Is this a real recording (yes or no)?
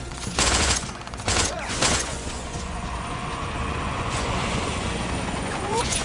no